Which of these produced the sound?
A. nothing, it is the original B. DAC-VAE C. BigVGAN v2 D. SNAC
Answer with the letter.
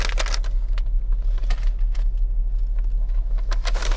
A